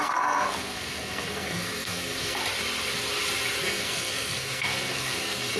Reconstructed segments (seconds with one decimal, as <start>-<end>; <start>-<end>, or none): 0.0-2.4; 3.6-5.6